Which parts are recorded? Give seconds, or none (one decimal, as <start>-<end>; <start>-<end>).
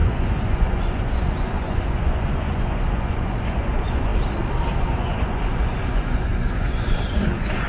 4.1-4.8